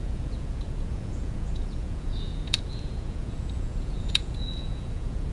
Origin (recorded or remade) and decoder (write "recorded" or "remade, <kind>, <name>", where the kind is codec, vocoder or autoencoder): remade, vocoder, Vocos